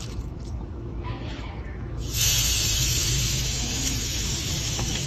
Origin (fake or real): fake